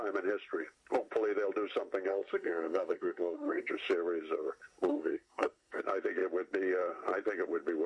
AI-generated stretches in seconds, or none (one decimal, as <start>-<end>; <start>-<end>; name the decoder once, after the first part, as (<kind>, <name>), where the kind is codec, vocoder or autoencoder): 2.1-3.7 (codec, SNAC); 4.9-5.8